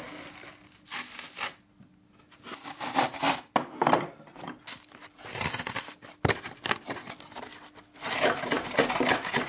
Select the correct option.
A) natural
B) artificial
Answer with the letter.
A